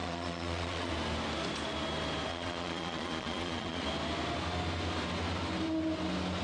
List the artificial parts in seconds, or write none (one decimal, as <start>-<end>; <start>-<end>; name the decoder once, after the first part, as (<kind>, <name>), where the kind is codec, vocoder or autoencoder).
0.0-0.9 (vocoder, Vocos); 2.3-3.8